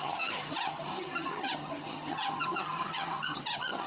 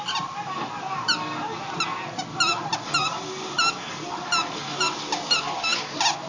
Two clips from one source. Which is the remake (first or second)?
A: first